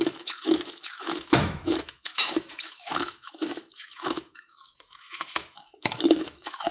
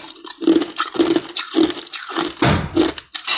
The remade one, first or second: first